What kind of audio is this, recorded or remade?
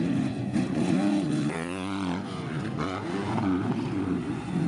remade